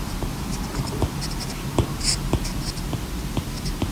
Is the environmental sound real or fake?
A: fake